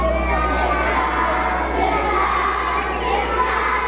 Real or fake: real